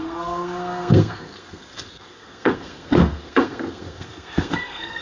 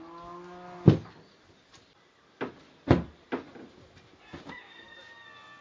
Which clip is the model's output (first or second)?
first